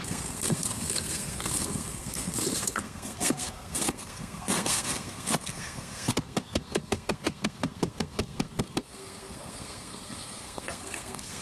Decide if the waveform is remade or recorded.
remade